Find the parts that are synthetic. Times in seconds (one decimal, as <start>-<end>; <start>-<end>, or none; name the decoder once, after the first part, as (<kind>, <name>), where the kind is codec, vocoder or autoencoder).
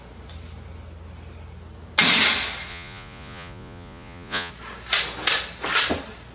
2.7-4.5 (vocoder, Vocos)